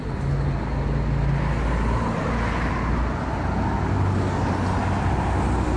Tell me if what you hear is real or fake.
real